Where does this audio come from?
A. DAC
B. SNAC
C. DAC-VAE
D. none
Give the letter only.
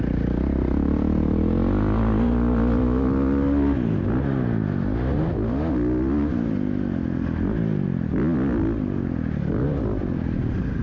D